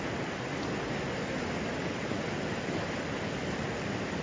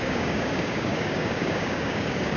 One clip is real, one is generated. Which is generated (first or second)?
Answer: second